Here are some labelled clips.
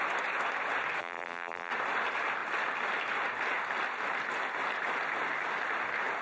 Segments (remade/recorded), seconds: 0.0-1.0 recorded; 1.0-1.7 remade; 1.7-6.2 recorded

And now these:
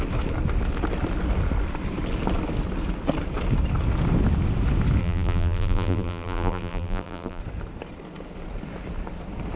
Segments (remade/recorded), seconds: 0.0-5.0 recorded; 5.0-7.4 remade; 7.4-9.6 recorded

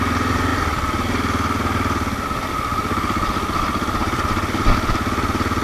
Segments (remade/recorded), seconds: 0.0-4.0 recorded; 4.0-4.5 remade; 4.5-5.6 recorded

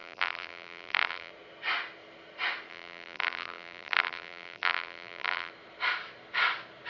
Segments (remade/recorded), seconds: 0.0-1.3 remade; 1.3-2.7 recorded; 2.7-5.5 remade; 5.5-6.9 recorded

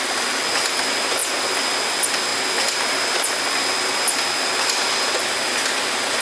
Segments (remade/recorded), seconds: 0.0-6.2 recorded